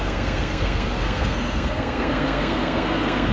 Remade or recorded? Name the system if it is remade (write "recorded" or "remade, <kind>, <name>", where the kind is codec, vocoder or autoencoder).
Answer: remade, codec, SNAC